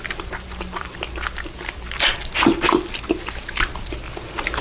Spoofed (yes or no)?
no